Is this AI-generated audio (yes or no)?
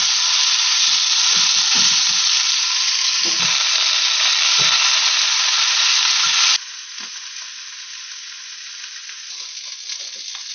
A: no